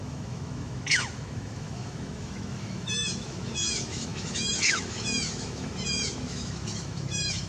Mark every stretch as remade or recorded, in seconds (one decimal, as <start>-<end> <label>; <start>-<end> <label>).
0.0-7.5 remade